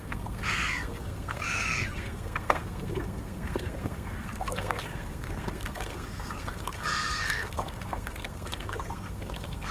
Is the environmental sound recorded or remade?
remade